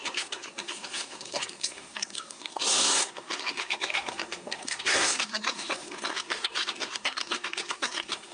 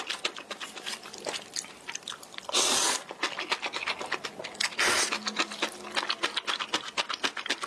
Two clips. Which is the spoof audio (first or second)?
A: first